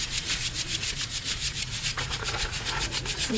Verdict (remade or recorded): remade